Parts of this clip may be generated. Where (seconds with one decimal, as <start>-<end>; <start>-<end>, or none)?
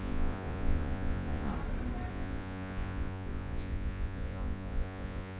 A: 0.0-1.5; 2.1-5.4